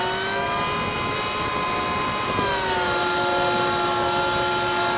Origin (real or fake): real